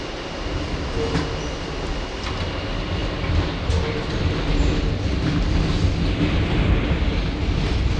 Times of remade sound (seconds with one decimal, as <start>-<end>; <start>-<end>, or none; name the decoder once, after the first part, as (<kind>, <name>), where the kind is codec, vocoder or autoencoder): none